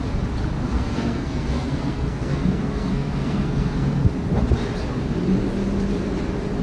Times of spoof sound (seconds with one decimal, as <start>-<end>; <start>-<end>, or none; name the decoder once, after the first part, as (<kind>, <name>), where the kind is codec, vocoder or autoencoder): 0.7-4.1 (codec, SNAC)